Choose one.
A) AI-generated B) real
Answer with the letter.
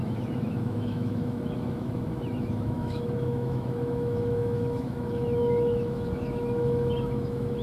A